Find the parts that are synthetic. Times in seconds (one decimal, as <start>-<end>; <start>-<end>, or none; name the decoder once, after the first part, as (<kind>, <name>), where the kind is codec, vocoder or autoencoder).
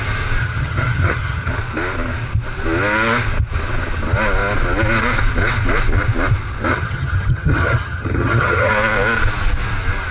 0.4-1.5 (vocoder, HiFi-GAN); 6.7-8.7